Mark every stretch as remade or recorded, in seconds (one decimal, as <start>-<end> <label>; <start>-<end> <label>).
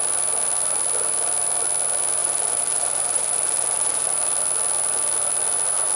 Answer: 0.0-2.2 recorded; 2.2-4.1 remade; 4.1-6.0 recorded